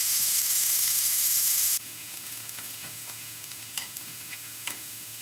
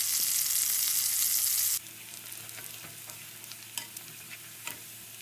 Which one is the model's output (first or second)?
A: first